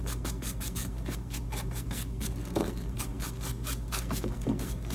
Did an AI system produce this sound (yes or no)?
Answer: yes